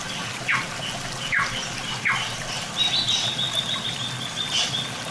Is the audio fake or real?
real